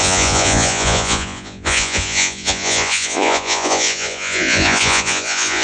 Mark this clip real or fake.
fake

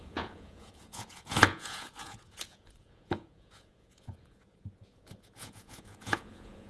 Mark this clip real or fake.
fake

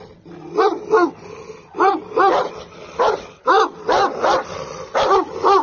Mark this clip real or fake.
real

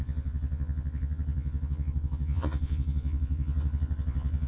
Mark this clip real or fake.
fake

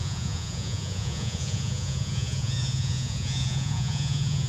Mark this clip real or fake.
fake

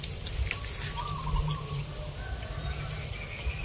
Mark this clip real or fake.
real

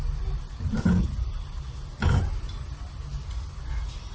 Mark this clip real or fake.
real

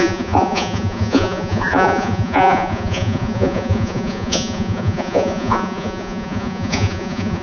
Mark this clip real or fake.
fake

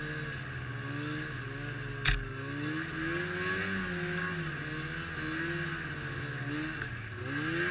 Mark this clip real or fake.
real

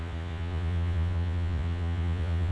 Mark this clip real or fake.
fake